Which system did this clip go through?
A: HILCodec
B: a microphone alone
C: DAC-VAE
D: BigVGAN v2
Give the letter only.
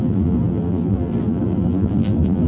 D